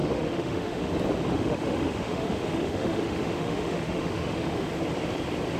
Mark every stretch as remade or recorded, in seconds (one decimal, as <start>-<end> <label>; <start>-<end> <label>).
0.0-0.9 remade; 0.9-1.3 recorded; 1.3-4.7 remade; 4.7-5.6 recorded